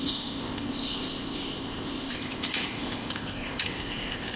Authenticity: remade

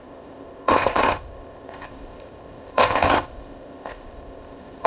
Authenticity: remade